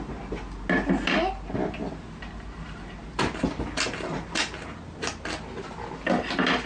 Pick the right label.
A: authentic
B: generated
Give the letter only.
A